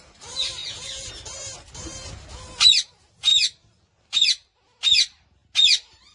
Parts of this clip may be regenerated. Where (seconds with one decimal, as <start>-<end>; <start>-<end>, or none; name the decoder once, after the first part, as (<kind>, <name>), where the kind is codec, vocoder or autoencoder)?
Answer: 0.6-1.1 (vocoder, Vocos)